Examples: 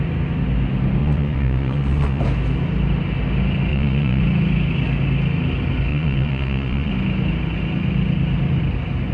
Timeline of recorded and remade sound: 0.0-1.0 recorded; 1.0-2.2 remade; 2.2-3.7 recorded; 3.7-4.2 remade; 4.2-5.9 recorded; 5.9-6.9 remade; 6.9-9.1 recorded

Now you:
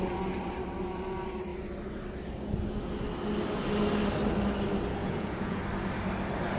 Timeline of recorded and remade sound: 0.0-5.0 recorded; 5.0-5.6 remade; 5.6-6.6 recorded

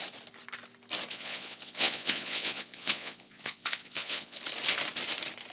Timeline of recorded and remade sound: 0.0-1.1 recorded; 1.1-4.4 remade; 4.4-5.5 recorded

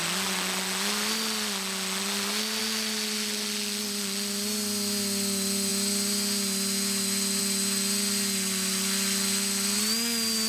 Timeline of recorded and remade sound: 0.0-10.5 recorded

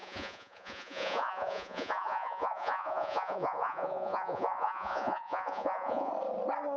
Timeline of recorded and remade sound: 0.0-6.1 remade; 6.1-6.8 recorded

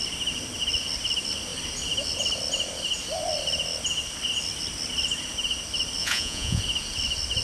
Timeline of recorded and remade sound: 0.0-6.0 recorded; 6.0-6.6 remade; 6.6-7.4 recorded

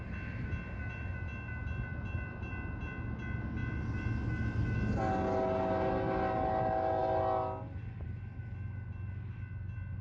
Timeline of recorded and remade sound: 0.0-10.0 recorded